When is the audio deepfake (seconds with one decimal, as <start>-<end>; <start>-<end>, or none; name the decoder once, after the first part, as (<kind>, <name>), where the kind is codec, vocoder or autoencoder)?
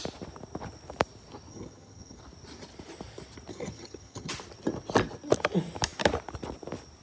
1.5-2.2 (vocoder, HiFi-GAN); 3.5-4.3